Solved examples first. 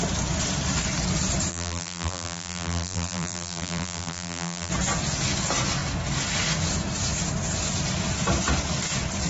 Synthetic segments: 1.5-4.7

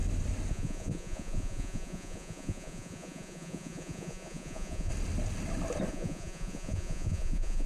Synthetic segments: 0.5-4.9; 5.9-7.7

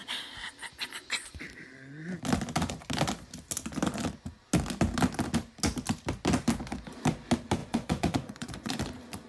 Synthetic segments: 0.6-1.4; 7.6-8.8

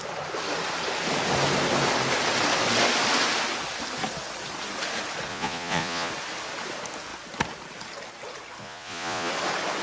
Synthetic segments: 5.3-6.1; 8.6-9.3

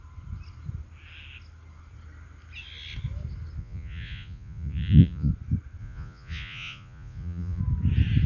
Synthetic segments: 3.6-5.3; 5.8-7.6

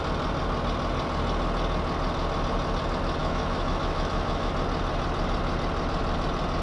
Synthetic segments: 3.2-4.5